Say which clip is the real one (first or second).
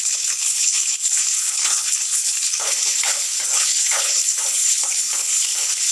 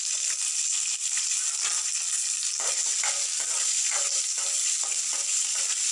second